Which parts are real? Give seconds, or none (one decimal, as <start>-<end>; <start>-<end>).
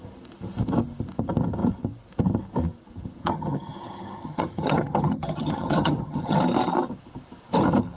0.0-3.2; 6.4-8.0